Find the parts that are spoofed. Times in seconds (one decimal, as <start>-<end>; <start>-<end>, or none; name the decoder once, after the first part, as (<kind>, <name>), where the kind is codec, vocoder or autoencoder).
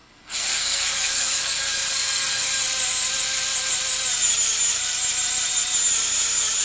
0.0-2.5 (codec, SNAC)